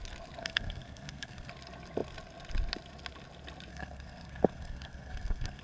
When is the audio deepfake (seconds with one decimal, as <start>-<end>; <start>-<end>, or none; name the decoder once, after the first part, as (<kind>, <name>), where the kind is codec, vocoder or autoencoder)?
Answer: 0.4-1.5 (codec, SNAC); 3.7-5.6